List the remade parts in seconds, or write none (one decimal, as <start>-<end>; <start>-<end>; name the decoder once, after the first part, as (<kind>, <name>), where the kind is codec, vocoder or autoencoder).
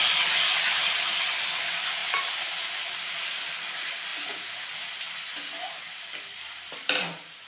2.0-3.4 (vocoder, BigVGAN v2)